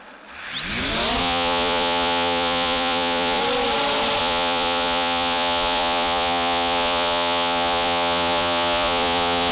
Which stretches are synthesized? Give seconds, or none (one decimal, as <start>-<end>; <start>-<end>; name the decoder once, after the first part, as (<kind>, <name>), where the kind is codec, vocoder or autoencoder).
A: 1.2-3.4 (vocoder, Vocos); 4.2-9.5